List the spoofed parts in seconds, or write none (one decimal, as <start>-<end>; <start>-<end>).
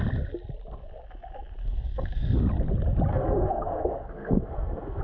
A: 1.6-2.4; 3.1-5.0